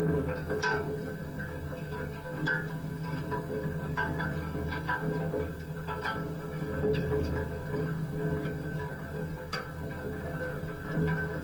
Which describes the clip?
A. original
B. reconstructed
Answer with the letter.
B